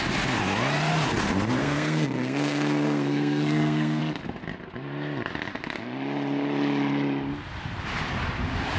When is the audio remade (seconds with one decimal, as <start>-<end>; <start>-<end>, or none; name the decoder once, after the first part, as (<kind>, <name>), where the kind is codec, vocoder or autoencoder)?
1.6-4.0 (codec, SNAC)